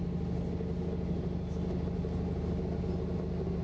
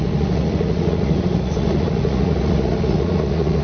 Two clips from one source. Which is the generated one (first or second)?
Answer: second